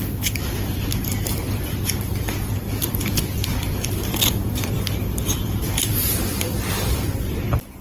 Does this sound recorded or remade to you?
remade